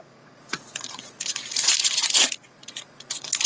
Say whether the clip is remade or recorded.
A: remade